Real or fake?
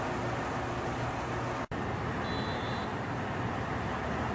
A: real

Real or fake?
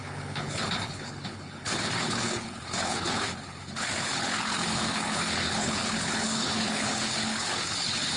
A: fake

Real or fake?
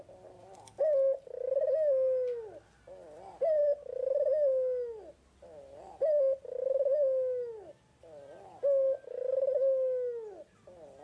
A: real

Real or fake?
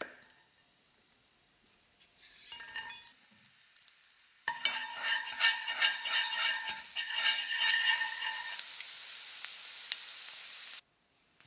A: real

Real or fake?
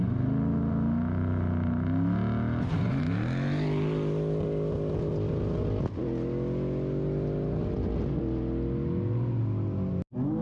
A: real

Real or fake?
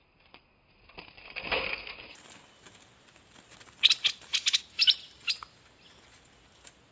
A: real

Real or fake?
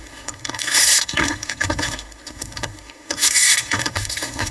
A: fake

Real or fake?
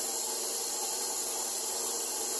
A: real